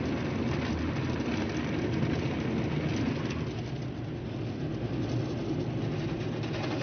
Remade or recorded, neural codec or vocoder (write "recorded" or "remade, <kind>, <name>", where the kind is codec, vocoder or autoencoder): recorded